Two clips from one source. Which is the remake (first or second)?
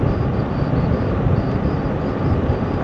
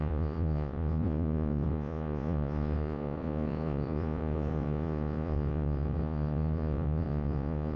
second